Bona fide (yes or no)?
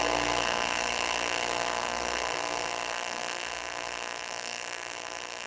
no